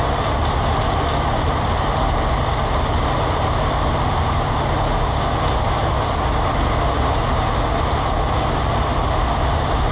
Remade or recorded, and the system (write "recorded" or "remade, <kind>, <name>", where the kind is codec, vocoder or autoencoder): recorded